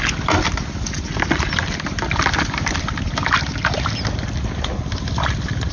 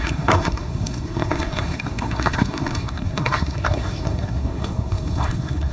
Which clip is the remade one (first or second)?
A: second